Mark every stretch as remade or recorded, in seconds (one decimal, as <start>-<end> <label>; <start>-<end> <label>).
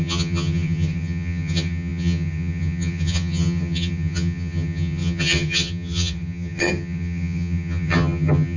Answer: 0.0-8.6 remade